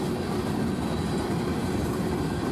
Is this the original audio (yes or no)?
yes